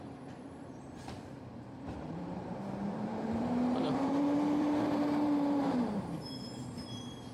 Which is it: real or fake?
fake